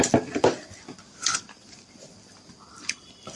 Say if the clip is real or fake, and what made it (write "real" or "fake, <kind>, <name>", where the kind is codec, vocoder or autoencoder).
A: fake, vocoder, BigVGAN v2